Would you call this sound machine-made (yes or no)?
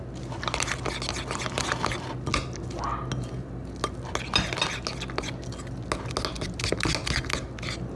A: no